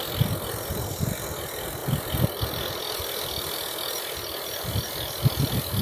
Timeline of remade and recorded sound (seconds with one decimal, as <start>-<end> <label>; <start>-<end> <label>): 0.0-1.8 recorded; 1.8-4.0 remade; 4.0-5.8 recorded